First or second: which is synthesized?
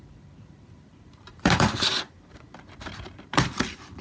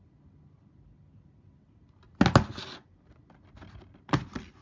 first